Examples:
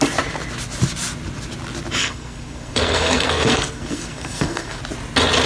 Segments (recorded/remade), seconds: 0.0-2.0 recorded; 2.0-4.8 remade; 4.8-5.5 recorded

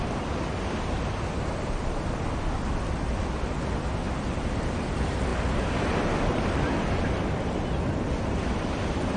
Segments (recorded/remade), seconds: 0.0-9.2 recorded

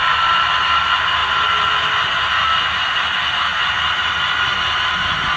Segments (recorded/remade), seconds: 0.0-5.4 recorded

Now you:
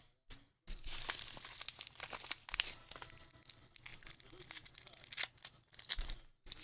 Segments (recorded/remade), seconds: 0.0-6.6 recorded